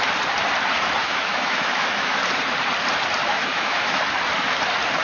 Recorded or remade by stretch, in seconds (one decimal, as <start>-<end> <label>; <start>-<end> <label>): 0.0-1.0 recorded; 1.0-2.2 remade; 2.2-3.3 recorded; 3.3-4.0 remade; 4.0-5.0 recorded